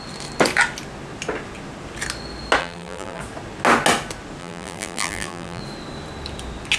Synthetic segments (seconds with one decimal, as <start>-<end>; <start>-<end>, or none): 2.6-3.2; 4.4-5.6